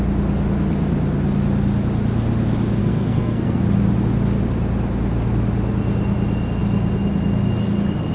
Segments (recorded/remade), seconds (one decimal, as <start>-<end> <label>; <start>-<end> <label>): 0.0-2.8 recorded; 2.8-3.6 remade; 3.6-8.1 recorded